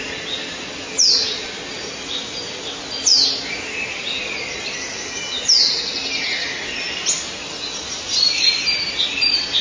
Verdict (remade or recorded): recorded